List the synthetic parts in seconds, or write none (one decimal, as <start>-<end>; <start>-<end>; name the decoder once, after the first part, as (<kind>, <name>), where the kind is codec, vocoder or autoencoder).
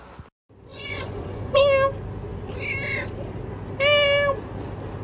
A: 0.7-1.6 (vocoder, Vocos)